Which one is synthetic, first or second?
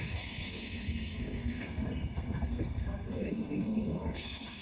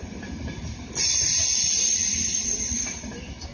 first